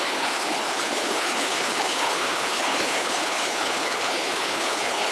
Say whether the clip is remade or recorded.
remade